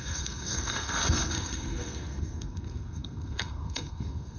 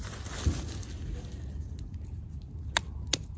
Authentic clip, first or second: second